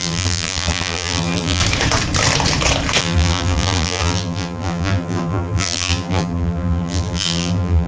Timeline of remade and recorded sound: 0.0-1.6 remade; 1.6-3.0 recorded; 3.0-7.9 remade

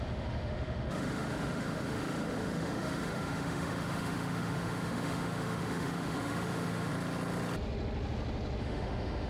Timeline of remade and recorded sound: 0.0-6.9 remade; 6.9-8.6 recorded; 8.6-9.3 remade